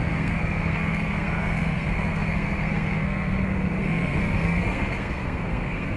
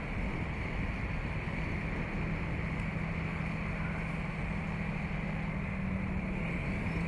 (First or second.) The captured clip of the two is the second